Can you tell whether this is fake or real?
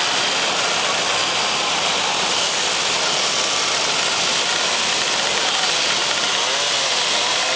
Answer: real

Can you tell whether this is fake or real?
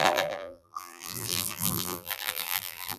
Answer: fake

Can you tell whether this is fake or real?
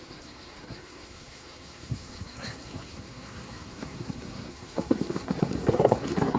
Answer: fake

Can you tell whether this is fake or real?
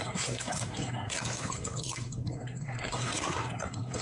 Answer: fake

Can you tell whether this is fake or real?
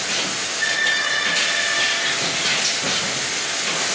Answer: real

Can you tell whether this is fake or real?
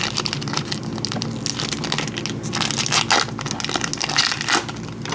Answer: real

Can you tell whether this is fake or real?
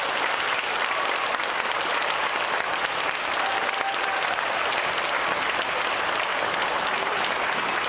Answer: real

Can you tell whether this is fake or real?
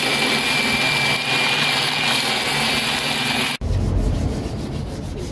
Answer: real